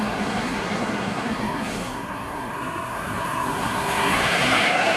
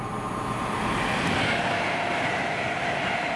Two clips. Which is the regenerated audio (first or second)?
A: first